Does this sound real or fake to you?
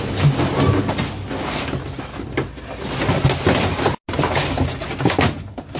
real